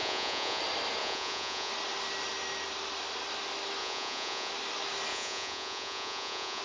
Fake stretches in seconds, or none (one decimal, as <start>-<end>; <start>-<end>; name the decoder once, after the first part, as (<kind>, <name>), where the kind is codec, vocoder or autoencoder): 0.0-0.6 (vocoder, Vocos); 1.0-1.7; 3.8-4.5; 5.1-6.6